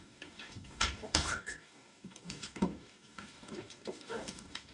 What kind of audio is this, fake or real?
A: fake